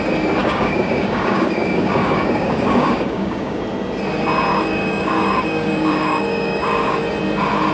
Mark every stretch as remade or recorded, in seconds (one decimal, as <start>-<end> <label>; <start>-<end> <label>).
0.0-0.4 recorded; 0.4-3.6 remade; 3.6-4.5 recorded; 4.5-7.0 remade; 7.0-7.7 recorded